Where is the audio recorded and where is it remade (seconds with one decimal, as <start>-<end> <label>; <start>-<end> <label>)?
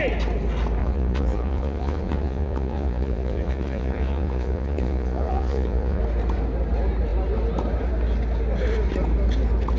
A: 0.0-0.8 recorded; 0.8-6.0 remade; 6.0-9.8 recorded